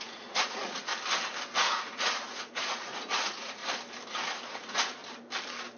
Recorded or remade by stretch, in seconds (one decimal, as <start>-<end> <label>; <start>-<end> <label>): 0.0-0.9 remade; 0.9-1.7 recorded; 1.7-3.6 remade; 3.6-4.1 recorded; 4.1-5.0 remade; 5.0-5.8 recorded